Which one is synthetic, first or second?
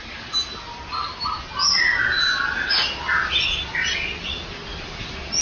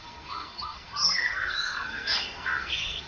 second